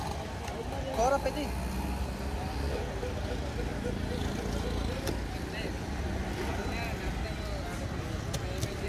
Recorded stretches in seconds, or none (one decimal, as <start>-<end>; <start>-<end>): 0.0-8.9